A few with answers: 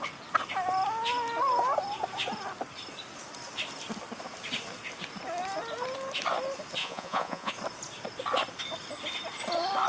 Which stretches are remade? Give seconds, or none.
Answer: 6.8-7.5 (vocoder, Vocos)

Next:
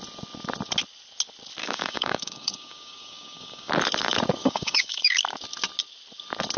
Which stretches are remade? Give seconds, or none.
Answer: 1.6-3.7 (codec, DAC); 4.4-5.2

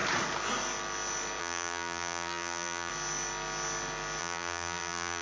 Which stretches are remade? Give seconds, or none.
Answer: 1.4-2.9 (vocoder, BigVGAN v2); 4.2-5.2